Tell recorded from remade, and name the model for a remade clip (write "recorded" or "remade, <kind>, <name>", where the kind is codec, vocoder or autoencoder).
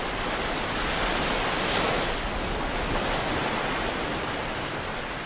recorded